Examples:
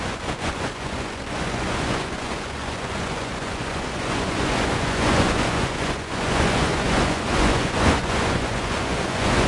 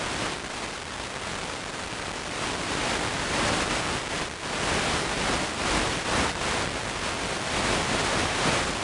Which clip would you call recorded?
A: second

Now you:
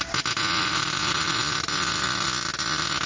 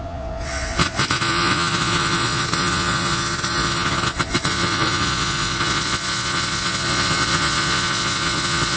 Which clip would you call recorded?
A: first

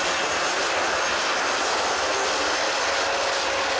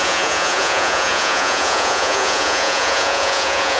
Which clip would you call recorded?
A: first